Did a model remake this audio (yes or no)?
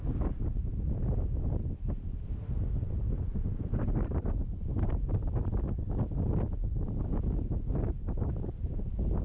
no